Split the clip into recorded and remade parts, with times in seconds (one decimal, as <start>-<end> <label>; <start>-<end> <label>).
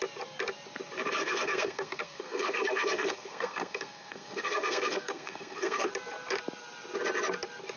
0.0-1.2 recorded; 1.2-5.9 remade; 5.9-7.8 recorded